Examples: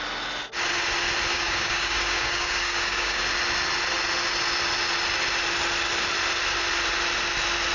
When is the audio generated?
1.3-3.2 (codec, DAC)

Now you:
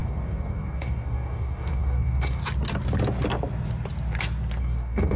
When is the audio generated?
0.0-2.4 (codec, DAC); 4.6-5.2

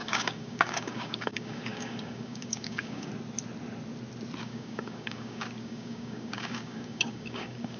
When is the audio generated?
0.0-3.1 (codec, DAC); 4.4-7.8